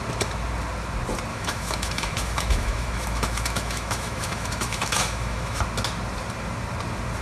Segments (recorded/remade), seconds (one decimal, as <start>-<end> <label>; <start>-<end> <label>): 0.0-1.3 recorded; 1.3-5.6 remade; 5.6-7.2 recorded